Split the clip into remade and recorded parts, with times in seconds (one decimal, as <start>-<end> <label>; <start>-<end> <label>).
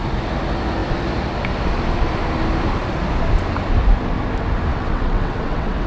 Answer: 0.0-4.7 recorded; 4.7-5.9 remade